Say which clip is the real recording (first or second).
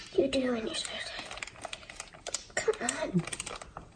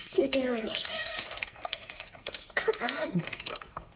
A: first